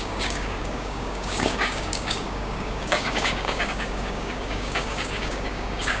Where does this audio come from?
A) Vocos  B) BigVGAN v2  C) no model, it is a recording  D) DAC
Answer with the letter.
D